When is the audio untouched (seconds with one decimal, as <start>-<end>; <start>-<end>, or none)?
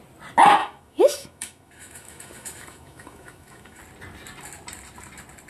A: 0.0-0.6; 3.8-5.5